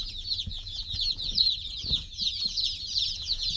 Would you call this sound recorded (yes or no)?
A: no